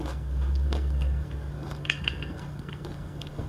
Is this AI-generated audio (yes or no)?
yes